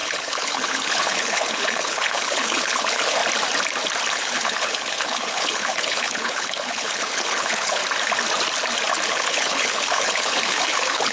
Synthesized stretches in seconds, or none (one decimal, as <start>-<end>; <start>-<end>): 0.0-3.2; 4.1-7.8; 9.1-11.1